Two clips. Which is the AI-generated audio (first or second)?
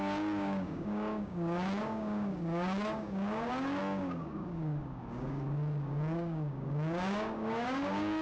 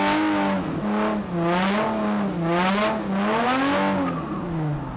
first